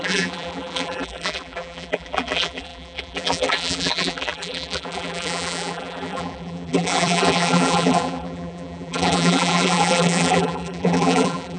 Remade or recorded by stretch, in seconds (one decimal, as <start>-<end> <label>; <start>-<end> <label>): 0.0-11.6 remade